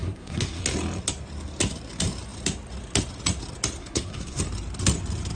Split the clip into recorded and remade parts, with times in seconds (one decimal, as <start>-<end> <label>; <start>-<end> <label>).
0.0-0.6 remade; 0.6-3.8 recorded; 3.8-4.4 remade; 4.4-5.4 recorded